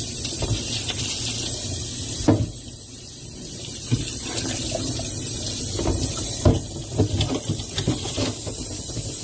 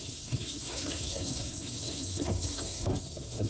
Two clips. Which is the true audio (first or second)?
first